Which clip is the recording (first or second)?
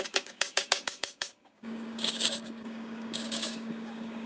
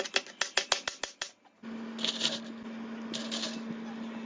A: second